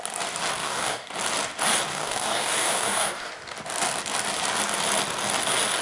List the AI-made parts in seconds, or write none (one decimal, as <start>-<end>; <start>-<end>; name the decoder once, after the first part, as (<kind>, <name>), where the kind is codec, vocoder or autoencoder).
0.6-1.1 (codec, DAC); 1.9-3.3